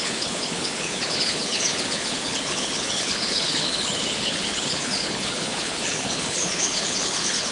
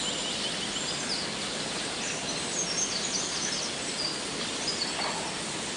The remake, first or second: first